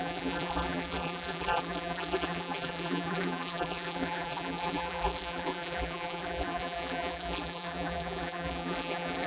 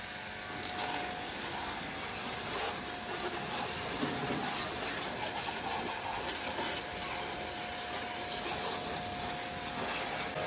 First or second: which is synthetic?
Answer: first